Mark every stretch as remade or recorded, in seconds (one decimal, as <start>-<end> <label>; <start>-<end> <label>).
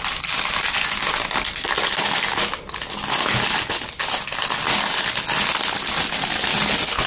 0.0-7.1 recorded